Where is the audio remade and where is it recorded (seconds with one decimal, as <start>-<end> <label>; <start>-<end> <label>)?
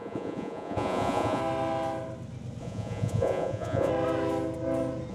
0.0-1.4 remade; 1.4-2.6 recorded; 2.6-3.9 remade; 3.9-5.1 recorded